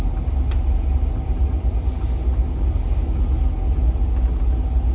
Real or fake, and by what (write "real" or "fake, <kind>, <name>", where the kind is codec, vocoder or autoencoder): real